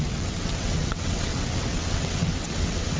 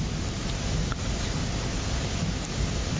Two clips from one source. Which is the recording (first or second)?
second